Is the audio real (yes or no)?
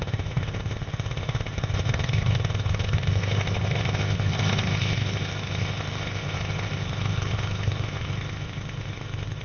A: no